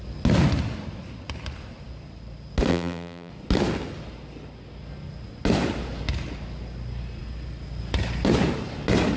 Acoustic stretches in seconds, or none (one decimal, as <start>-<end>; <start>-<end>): 0.0-2.7; 3.3-9.2